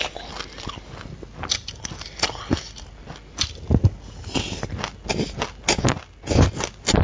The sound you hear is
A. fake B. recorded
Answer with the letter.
B